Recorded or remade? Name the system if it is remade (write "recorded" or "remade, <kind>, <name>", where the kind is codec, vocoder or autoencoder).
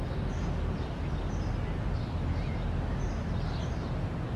recorded